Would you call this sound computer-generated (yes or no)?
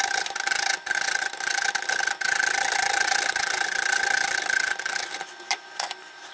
no